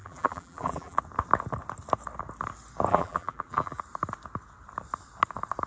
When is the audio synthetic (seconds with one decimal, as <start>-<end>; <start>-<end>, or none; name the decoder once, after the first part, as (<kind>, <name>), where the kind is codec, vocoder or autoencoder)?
0.0-1.0 (vocoder, BigVGAN v2); 2.9-3.8